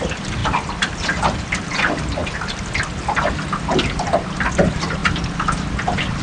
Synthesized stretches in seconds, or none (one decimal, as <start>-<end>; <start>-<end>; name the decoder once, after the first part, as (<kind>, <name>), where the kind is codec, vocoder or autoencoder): 0.0-2.2 (vocoder, BigVGAN v2); 3.3-5.0